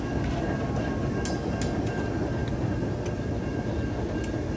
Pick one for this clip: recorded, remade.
recorded